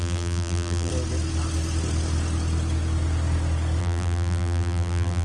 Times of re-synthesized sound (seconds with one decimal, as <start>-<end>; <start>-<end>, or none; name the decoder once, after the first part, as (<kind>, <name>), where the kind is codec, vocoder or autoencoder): 0.0-0.9 (vocoder, BigVGAN v2); 3.8-5.2